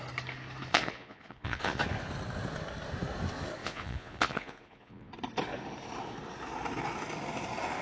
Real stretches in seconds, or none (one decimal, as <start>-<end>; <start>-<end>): 0.0-0.7; 1.8-3.6; 5.1-7.8

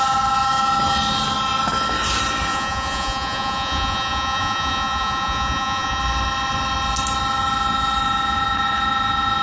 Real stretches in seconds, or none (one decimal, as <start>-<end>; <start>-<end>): 0.0-2.5; 6.0-9.4